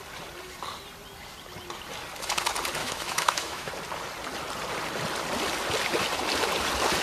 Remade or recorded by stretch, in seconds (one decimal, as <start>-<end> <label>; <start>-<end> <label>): 0.0-2.8 recorded; 2.8-3.7 remade; 3.7-7.0 recorded